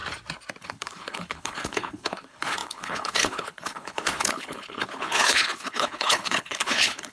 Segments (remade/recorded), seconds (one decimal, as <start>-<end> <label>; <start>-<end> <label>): 0.0-0.6 recorded; 0.6-7.1 remade